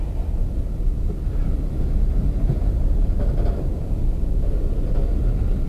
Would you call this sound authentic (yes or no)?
yes